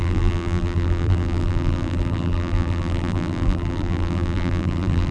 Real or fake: fake